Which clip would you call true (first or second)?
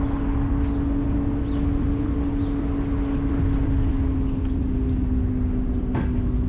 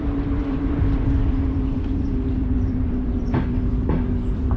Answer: first